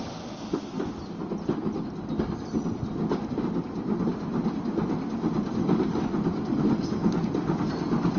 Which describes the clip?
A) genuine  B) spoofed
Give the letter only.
A